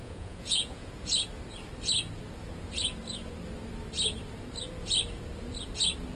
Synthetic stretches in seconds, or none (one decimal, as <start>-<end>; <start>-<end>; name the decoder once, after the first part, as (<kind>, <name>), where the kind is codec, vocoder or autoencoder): 0.0-0.9 (vocoder, Vocos)